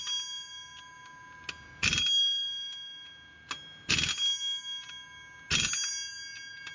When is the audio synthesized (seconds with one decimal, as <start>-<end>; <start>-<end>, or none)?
none